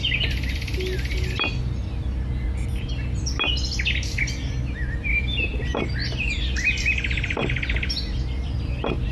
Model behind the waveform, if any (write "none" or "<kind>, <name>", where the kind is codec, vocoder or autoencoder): none